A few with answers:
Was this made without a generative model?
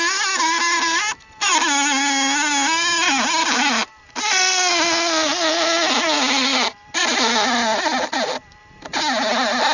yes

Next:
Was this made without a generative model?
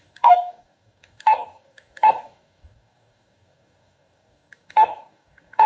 no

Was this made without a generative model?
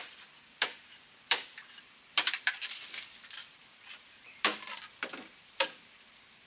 no